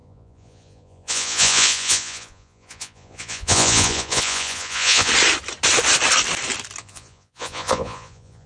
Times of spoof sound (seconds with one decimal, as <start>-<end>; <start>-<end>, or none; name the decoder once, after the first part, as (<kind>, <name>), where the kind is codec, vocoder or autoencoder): 0.0-5.1 (vocoder, Vocos); 6.8-8.5